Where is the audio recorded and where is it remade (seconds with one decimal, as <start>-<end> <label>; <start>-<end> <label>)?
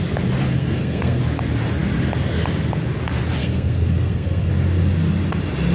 0.0-0.5 recorded; 0.5-1.2 remade; 1.2-3.4 recorded; 3.4-4.5 remade; 4.5-5.7 recorded